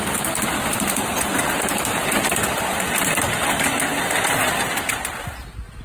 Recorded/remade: recorded